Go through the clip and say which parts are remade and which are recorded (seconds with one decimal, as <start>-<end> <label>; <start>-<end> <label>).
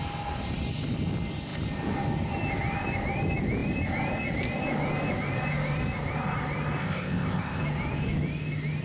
0.0-6.8 recorded; 6.8-7.6 remade; 7.6-8.8 recorded